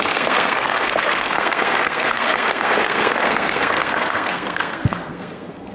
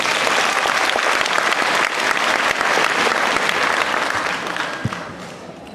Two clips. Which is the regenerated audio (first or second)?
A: first